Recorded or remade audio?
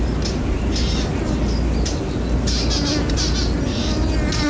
recorded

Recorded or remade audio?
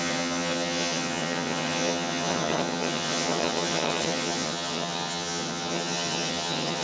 remade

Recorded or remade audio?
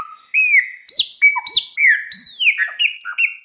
recorded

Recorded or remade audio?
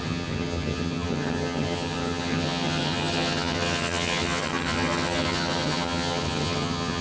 remade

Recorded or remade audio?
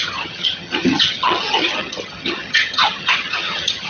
remade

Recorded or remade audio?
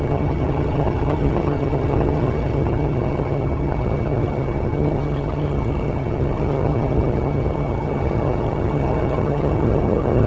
remade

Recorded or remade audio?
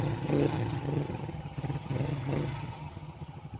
remade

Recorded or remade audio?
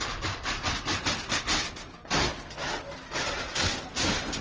recorded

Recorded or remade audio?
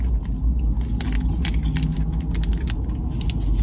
recorded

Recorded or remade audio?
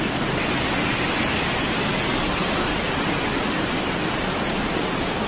recorded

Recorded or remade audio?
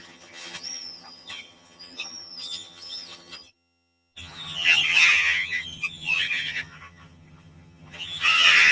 remade